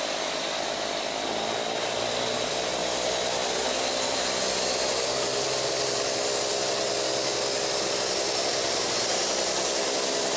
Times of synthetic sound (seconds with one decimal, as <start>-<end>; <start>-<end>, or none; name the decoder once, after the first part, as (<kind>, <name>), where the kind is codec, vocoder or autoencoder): none